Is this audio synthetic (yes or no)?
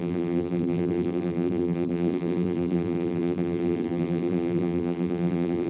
yes